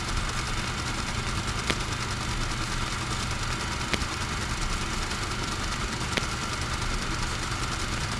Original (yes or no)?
yes